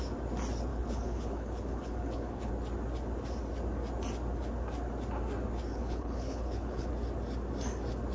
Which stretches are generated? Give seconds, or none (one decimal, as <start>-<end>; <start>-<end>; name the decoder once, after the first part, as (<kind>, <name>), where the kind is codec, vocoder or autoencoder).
0.7-2.5 (codec, HILCodec); 5.7-6.9